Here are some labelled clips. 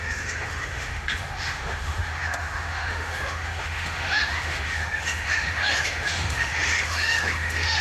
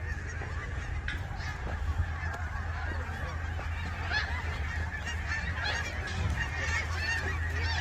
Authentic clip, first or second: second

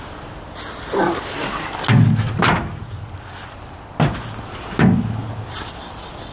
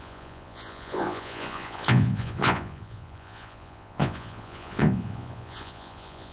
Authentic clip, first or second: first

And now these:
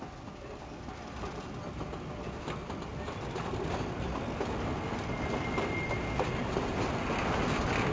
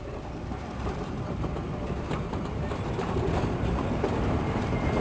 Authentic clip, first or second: first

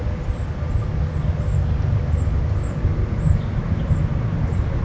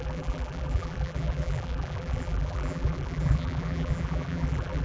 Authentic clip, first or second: first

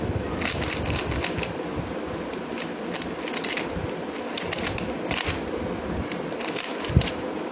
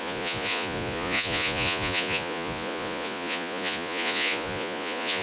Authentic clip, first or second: first